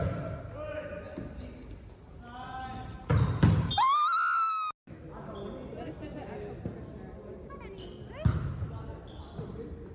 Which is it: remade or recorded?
recorded